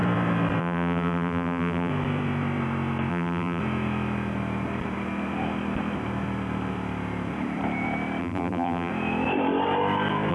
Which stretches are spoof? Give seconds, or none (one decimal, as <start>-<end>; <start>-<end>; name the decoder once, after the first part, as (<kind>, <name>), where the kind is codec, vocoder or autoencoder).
0.6-1.9 (vocoder, BigVGAN v2); 3.1-3.6; 8.2-8.9